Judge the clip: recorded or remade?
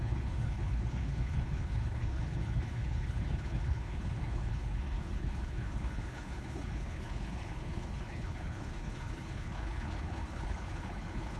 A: remade